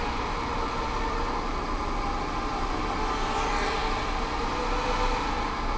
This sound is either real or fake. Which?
real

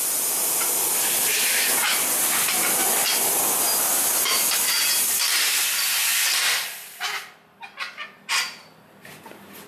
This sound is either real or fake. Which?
real